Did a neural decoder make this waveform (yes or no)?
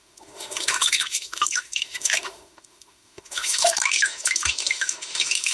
yes